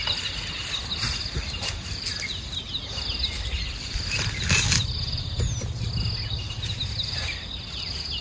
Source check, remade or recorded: recorded